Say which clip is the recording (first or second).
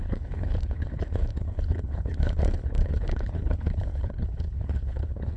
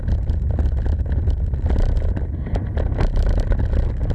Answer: second